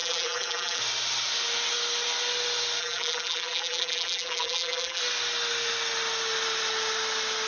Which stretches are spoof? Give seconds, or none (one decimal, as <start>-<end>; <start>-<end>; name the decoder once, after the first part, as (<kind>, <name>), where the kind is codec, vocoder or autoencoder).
0.0-0.8 (vocoder, BigVGAN v2); 2.8-5.0